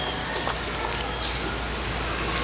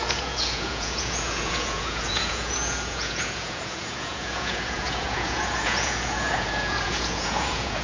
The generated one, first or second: second